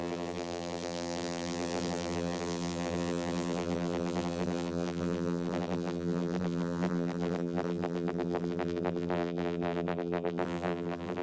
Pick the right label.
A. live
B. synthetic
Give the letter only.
B